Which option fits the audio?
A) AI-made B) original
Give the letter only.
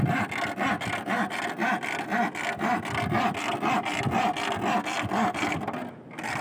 B